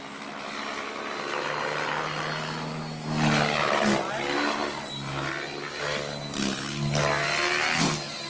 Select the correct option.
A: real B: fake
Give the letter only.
A